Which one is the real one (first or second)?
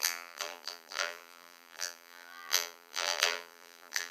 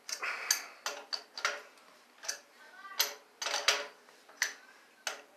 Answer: second